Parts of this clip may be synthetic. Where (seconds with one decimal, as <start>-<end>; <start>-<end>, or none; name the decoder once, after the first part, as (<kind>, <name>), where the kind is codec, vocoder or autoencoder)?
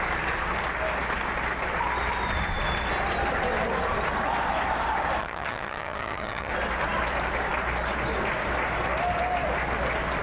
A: 5.2-6.5 (vocoder, HiFi-GAN)